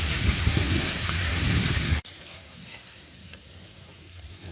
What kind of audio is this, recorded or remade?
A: remade